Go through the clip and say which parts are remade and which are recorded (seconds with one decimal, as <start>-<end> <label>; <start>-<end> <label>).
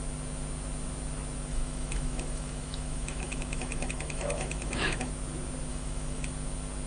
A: 0.0-1.5 recorded; 1.5-5.1 remade; 5.1-5.7 recorded; 5.7-6.3 remade; 6.3-6.9 recorded